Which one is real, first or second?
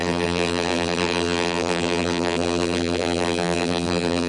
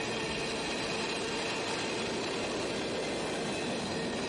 second